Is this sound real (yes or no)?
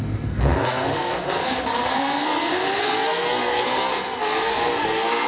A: no